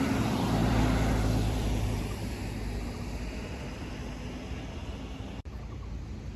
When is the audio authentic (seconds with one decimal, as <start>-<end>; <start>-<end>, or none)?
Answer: 0.0-0.6; 2.0-6.4